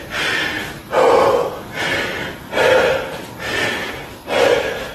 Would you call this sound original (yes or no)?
yes